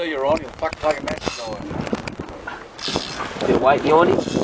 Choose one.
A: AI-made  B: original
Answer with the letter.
B